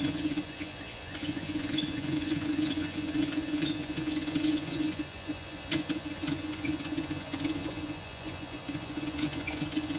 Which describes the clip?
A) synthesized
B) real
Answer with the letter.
A